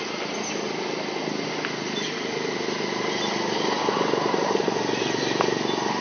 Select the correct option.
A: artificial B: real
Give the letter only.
B